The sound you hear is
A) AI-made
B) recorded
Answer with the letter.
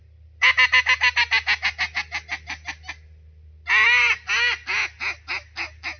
B